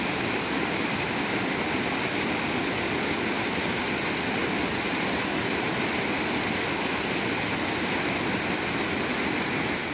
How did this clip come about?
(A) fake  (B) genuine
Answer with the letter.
B